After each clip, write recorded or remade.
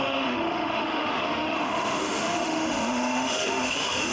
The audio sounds remade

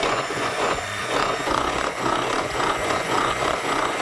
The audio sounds remade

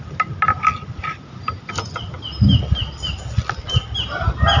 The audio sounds recorded